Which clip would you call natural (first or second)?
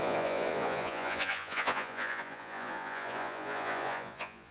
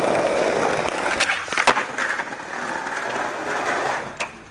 second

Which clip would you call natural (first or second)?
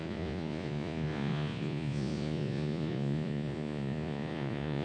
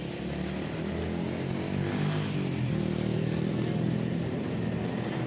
second